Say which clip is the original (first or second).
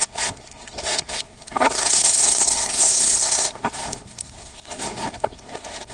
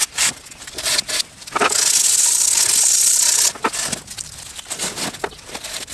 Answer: second